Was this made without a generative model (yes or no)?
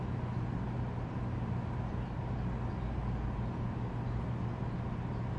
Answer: yes